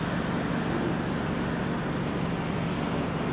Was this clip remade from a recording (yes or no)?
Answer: no